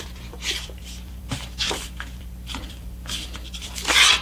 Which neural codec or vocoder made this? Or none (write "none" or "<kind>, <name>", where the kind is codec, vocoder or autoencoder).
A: vocoder, BigVGAN v2